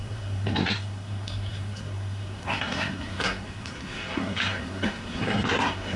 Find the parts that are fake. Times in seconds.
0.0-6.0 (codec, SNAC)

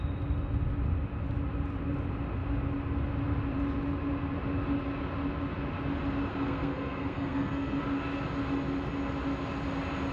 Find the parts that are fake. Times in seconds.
6.3-7.8 (codec, SNAC)

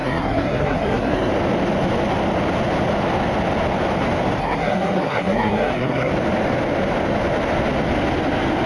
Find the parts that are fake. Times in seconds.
0.0-1.3 (codec, SNAC); 4.4-6.1

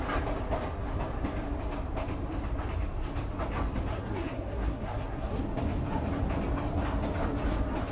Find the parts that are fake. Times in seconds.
3.9-5.4 (codec, SNAC)

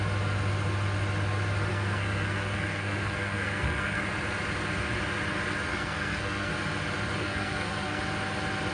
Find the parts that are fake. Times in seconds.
1.7-4.0 (codec, SNAC); 5.7-6.5; 7.2-8.0

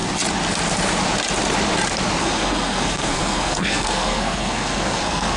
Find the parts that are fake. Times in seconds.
2.2-5.4 (codec, SNAC)

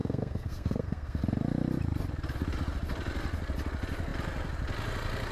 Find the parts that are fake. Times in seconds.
0.0-1.2 (codec, SNAC)